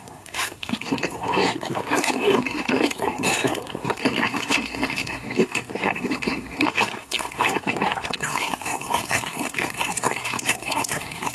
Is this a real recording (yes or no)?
no